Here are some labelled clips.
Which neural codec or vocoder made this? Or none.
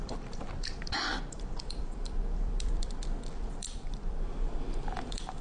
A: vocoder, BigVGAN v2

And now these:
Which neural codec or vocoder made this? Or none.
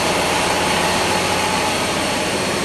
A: vocoder, BigVGAN v2